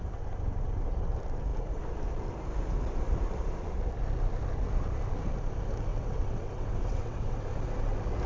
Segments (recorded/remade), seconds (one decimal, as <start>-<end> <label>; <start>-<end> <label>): 0.0-5.9 recorded; 5.9-7.4 remade; 7.4-8.3 recorded